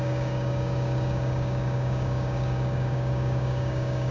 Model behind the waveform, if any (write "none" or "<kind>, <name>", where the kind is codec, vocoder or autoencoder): codec, DAC